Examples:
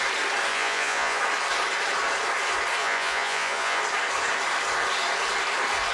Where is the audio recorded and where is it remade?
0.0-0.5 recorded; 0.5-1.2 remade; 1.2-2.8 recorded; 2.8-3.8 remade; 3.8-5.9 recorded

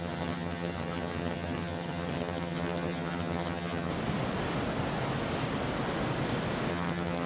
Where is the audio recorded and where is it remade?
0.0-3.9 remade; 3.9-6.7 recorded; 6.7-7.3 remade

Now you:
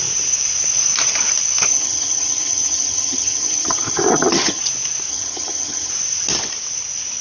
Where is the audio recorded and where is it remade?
0.0-1.7 recorded; 1.7-4.6 remade; 4.6-5.1 recorded; 5.1-5.9 remade; 5.9-7.2 recorded

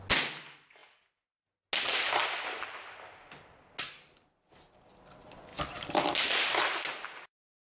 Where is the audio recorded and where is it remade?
0.0-5.5 recorded; 5.5-6.1 remade; 6.1-7.7 recorded

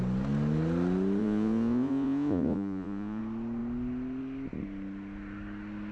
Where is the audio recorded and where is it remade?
0.0-1.2 recorded; 1.2-3.2 remade; 3.2-5.9 recorded

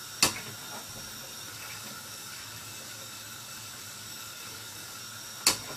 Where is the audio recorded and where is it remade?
0.0-1.5 recorded; 1.5-5.0 remade; 5.0-5.8 recorded

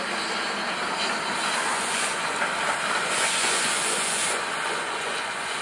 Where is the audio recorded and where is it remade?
0.0-1.7 recorded; 1.7-2.4 remade; 2.4-3.0 recorded; 3.0-5.6 remade